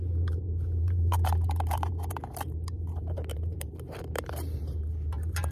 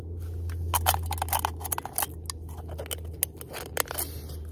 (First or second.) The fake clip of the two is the first